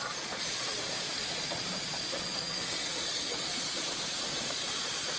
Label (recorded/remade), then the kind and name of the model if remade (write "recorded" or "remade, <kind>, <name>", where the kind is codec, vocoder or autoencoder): remade, vocoder, Vocos